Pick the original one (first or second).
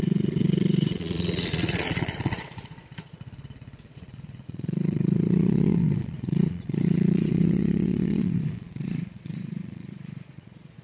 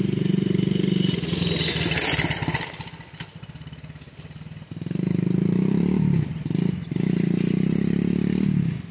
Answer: second